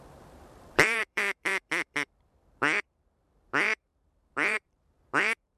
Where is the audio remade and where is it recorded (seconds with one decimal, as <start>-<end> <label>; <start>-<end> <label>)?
0.0-5.6 remade